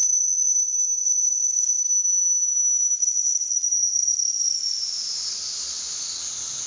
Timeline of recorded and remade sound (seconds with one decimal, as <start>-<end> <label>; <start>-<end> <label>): 0.0-1.8 remade; 1.8-3.0 recorded; 3.0-4.8 remade; 4.8-6.7 recorded